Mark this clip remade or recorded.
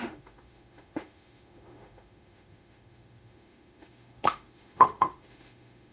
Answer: remade